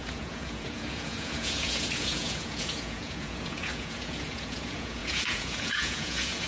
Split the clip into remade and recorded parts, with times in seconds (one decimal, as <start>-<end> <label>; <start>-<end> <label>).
0.0-6.5 remade